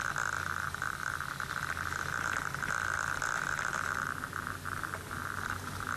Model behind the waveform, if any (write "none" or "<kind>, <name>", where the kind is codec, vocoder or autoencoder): none